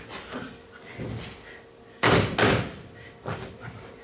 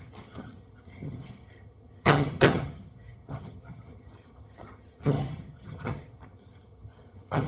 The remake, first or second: second